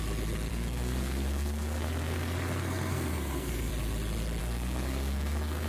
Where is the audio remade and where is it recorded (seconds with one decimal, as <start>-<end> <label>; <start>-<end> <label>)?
0.0-0.5 recorded; 0.5-3.7 remade; 3.7-4.4 recorded; 4.4-5.7 remade